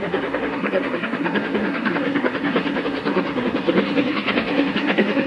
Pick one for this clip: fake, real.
fake